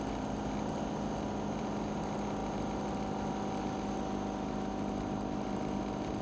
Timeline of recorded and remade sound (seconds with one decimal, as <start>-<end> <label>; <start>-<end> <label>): 0.0-6.2 recorded

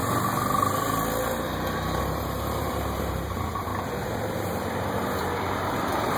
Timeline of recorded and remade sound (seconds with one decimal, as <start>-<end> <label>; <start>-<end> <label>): 0.0-2.0 recorded; 2.0-3.7 remade; 3.7-4.3 recorded; 4.3-6.2 remade

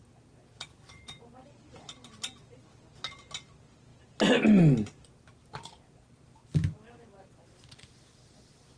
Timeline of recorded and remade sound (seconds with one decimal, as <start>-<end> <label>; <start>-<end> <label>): 0.0-8.8 recorded

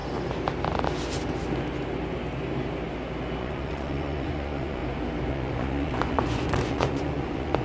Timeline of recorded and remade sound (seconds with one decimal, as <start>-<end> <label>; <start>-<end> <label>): 0.0-3.4 recorded; 3.4-4.8 remade; 4.8-5.3 recorded; 5.3-7.6 remade

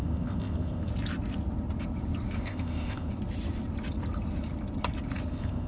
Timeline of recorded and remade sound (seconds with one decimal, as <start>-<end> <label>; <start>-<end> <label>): 0.0-0.9 remade; 0.9-2.4 recorded; 2.4-3.1 remade; 3.1-5.3 recorded; 5.3-5.7 remade

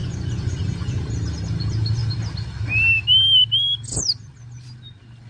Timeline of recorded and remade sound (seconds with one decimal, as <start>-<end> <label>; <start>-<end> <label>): 0.0-1.1 remade; 1.1-5.3 recorded